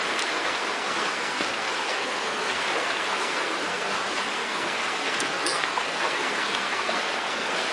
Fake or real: fake